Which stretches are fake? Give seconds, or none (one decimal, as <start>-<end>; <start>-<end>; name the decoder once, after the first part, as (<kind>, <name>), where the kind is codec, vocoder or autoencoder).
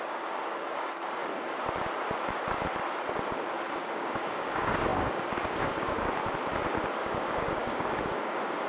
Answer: 0.0-1.2 (codec, DAC); 3.9-6.2; 7.0-8.7